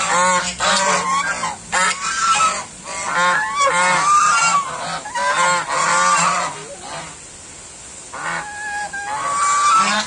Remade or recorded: recorded